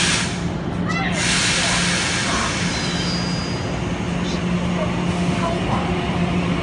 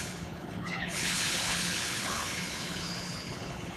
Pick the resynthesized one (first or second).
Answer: second